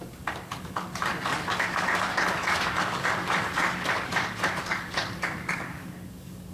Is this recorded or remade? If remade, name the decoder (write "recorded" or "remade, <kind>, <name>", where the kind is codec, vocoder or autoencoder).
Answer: remade, codec, DAC